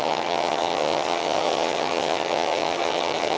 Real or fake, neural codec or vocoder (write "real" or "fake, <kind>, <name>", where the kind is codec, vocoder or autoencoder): fake, vocoder, HiFi-GAN